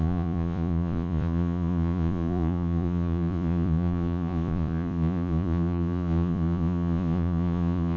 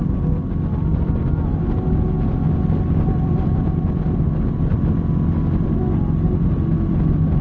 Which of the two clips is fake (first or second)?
first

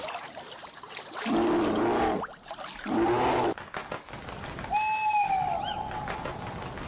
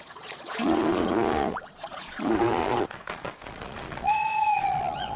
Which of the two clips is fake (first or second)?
second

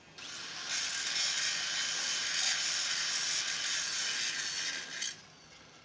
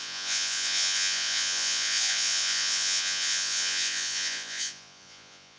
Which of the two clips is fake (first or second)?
second